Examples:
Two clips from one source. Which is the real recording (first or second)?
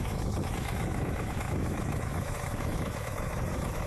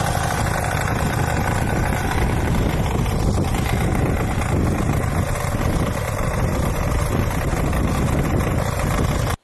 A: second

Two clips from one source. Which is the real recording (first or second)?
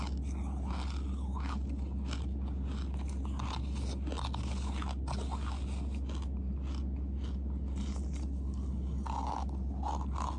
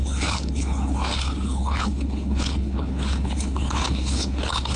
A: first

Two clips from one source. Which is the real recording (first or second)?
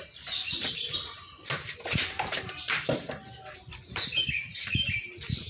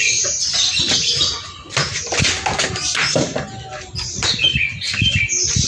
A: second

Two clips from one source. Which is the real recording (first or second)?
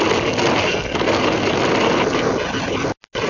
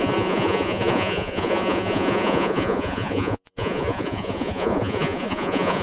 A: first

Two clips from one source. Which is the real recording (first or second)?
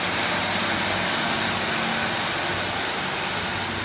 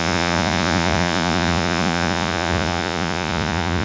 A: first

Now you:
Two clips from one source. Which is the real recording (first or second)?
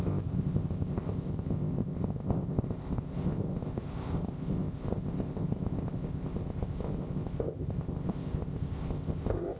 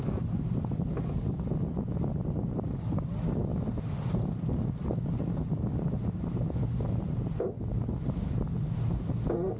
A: second